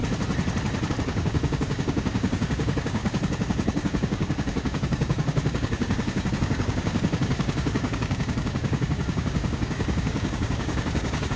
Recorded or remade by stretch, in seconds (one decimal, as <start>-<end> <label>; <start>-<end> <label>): 0.0-0.9 recorded; 0.9-11.4 remade